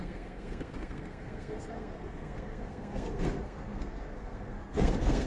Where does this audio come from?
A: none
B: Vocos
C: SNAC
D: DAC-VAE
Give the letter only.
C